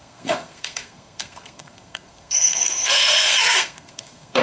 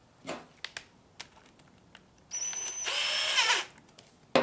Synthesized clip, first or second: first